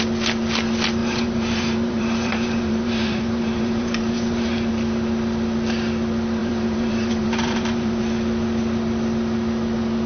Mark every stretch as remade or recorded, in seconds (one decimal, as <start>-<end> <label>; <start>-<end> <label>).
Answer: 0.0-1.0 recorded; 1.0-4.7 remade; 4.7-6.4 recorded; 6.4-8.0 remade; 8.0-10.1 recorded